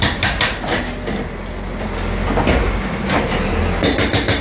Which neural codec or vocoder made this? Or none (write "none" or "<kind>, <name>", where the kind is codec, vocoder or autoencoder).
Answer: none